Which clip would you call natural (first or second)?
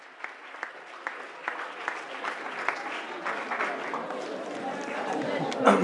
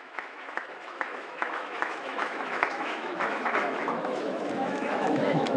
first